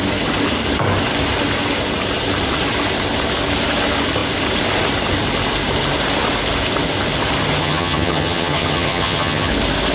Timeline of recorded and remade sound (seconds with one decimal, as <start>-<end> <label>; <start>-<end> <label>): 0.0-7.6 recorded; 7.6-9.5 remade; 9.5-9.9 recorded